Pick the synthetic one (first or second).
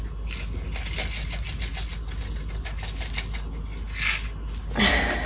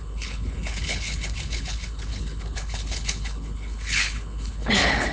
second